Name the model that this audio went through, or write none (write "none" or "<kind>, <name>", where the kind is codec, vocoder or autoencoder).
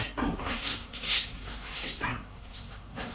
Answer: codec, SNAC